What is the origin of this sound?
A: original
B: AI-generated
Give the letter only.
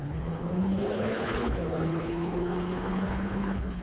B